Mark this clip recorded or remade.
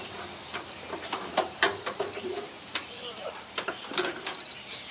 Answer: remade